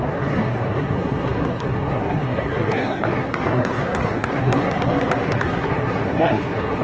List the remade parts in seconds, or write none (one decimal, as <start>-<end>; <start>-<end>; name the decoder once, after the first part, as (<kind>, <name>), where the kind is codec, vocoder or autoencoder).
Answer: 0.0-6.8 (codec, SNAC)